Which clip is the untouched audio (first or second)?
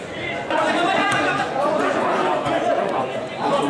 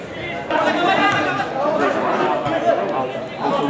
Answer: second